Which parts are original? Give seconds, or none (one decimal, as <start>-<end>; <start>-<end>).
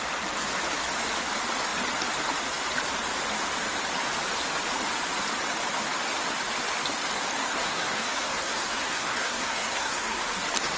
0.0-7.4; 10.2-10.8